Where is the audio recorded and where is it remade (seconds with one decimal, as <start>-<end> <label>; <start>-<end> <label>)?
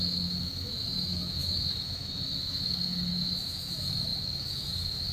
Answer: 0.0-5.1 remade